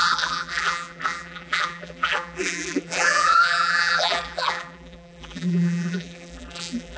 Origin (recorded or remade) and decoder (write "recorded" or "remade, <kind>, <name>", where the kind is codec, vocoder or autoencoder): remade, vocoder, BigVGAN v2